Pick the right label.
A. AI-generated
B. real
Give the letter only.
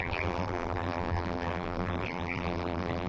A